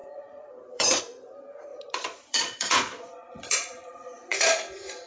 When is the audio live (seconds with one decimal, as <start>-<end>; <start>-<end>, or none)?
1.0-1.7